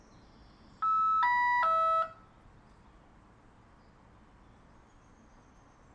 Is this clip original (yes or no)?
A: yes